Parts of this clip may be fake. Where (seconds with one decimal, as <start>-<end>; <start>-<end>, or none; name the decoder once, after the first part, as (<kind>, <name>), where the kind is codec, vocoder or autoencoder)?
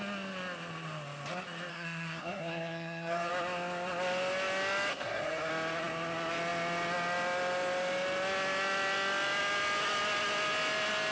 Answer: 1.7-3.3 (codec, SNAC); 4.9-5.5